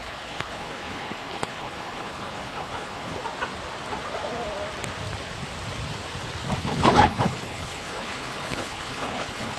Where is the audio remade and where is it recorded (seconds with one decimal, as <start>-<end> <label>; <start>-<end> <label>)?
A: 0.0-3.2 remade; 3.2-6.6 recorded; 6.6-9.6 remade